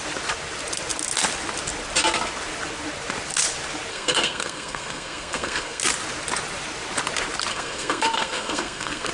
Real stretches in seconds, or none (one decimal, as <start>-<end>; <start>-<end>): 0.0-3.9; 5.8-7.5